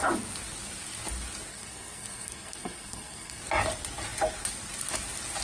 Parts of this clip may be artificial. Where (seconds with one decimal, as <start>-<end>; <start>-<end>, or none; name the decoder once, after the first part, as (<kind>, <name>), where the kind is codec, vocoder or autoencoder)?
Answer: 1.5-3.4 (codec, SNAC)